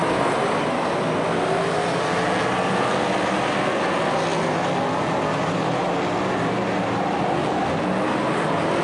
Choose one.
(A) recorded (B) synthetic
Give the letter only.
A